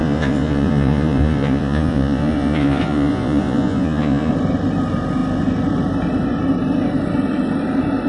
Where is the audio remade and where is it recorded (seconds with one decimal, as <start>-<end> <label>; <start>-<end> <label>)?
0.0-4.3 remade; 4.3-8.1 recorded